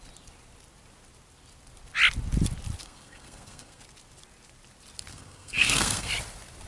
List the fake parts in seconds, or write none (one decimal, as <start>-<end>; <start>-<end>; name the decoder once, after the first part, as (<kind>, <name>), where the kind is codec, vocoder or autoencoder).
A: 2.8-3.8 (codec, SNAC); 5.1-6.1